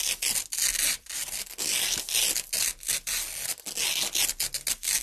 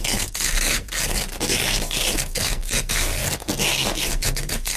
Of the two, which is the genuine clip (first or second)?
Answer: first